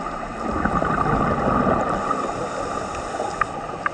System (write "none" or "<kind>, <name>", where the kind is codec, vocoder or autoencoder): none